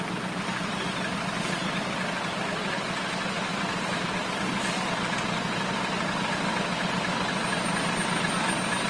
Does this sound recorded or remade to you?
recorded